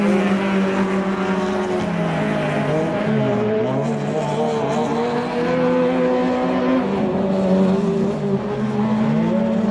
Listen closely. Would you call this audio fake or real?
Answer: real